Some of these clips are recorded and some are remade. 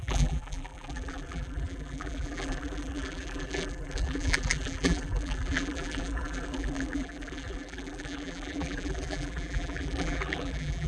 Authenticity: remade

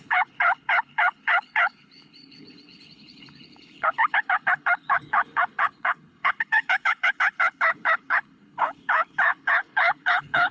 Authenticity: remade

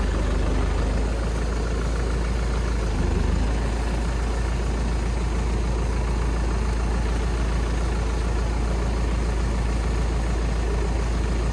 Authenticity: recorded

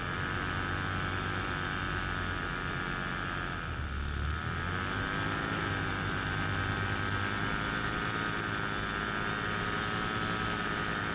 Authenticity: recorded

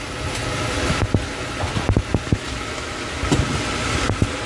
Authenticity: recorded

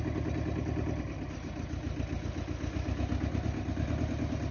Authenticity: recorded